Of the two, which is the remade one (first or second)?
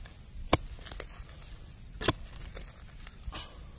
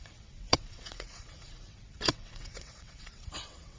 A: second